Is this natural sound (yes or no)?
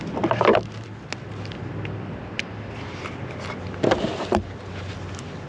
yes